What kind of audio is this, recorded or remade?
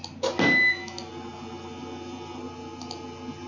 recorded